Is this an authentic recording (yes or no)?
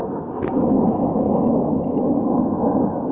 no